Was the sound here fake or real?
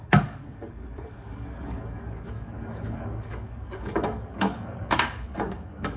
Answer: fake